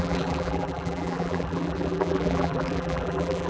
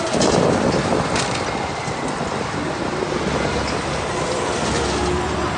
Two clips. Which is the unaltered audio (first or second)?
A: second